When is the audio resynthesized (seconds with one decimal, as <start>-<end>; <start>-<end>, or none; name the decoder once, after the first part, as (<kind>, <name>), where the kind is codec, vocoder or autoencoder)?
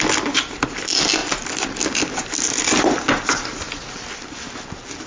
none